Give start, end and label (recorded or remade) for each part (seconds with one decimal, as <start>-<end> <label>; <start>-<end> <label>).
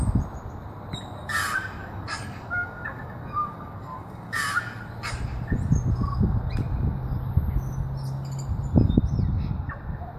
0.0-1.8 recorded; 1.8-4.4 remade; 4.4-10.2 recorded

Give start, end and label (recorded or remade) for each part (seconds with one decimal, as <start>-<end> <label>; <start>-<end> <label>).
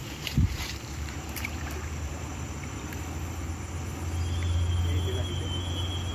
0.0-2.3 remade; 2.3-6.1 recorded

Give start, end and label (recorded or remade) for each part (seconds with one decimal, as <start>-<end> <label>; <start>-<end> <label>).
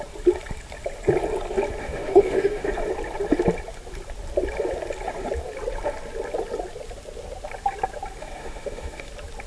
0.0-1.8 recorded; 1.8-2.7 remade; 2.7-8.2 recorded; 8.2-9.1 remade; 9.1-9.5 recorded